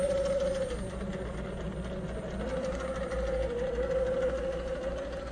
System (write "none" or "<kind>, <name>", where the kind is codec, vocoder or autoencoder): none